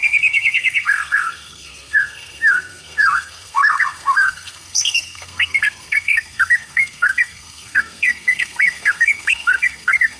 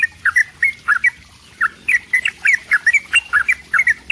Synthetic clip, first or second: first